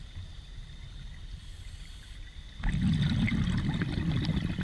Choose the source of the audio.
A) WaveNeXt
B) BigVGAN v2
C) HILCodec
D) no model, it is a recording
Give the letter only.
D